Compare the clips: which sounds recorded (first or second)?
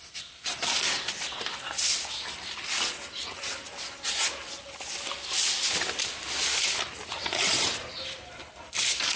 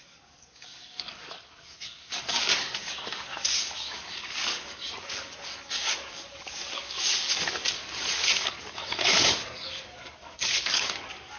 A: first